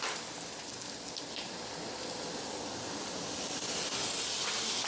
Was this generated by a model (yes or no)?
no